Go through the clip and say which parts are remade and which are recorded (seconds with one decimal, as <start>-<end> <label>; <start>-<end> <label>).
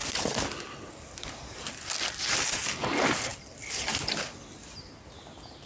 0.0-5.7 recorded